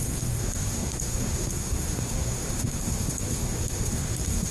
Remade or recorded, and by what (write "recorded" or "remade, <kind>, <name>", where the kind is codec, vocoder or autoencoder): remade, codec, SNAC